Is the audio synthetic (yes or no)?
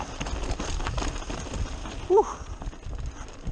no